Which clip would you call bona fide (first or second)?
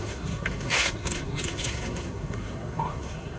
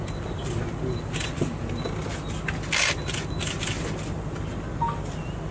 second